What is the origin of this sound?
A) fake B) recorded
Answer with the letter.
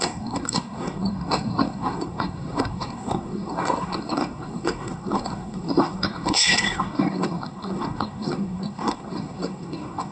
A